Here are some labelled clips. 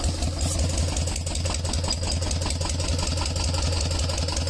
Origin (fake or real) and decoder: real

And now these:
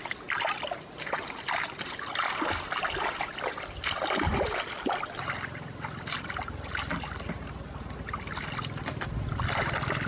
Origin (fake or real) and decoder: real